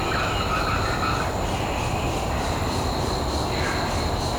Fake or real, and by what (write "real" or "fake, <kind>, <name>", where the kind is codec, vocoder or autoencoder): real